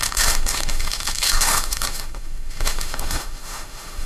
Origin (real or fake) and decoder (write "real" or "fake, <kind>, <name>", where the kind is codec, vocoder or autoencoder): fake, autoencoder, DAC-VAE